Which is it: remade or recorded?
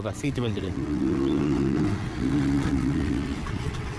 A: remade